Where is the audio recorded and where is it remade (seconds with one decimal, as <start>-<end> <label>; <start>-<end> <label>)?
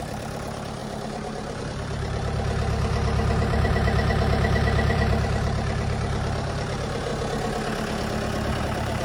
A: 0.0-7.1 remade; 7.1-8.6 recorded; 8.6-9.0 remade